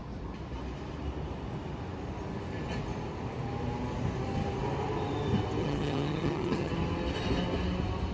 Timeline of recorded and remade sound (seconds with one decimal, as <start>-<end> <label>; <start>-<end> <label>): 0.0-5.6 recorded; 5.6-6.7 remade; 6.7-8.1 recorded